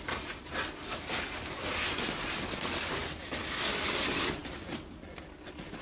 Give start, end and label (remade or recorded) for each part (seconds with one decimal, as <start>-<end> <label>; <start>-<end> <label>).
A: 0.0-5.8 recorded